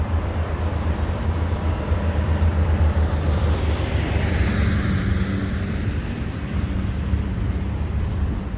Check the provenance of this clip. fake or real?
fake